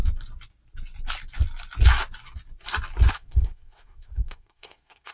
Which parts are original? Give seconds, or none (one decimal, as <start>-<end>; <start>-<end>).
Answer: 0.0-3.1